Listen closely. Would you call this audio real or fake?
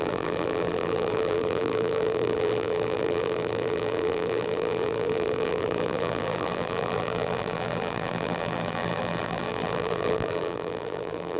fake